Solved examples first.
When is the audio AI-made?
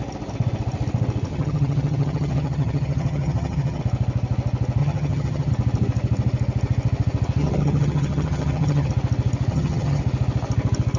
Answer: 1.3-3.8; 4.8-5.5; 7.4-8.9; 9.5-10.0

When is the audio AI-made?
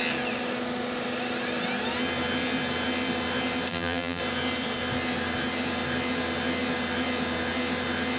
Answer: 3.7-4.2